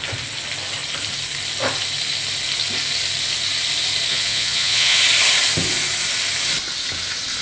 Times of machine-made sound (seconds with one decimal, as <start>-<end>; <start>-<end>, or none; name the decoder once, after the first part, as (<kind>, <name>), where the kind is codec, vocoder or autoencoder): 4.1-5.0 (vocoder, Vocos)